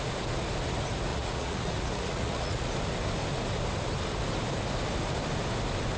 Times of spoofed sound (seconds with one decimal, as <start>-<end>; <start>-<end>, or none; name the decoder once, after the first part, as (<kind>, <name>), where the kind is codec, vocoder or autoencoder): 1.1-2.7 (vocoder, Vocos)